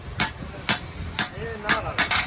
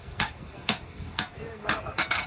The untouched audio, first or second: first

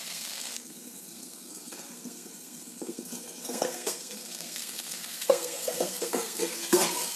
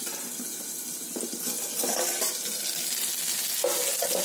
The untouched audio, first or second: second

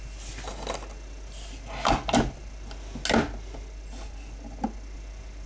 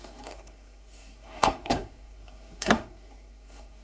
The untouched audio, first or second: first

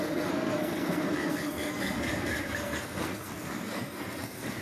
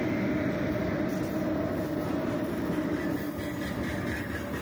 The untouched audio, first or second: second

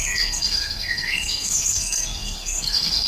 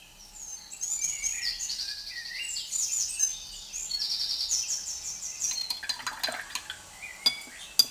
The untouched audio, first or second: second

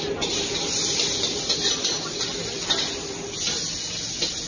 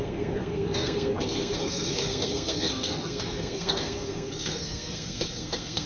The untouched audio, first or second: first